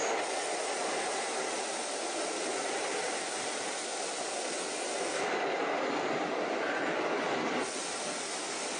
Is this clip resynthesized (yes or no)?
no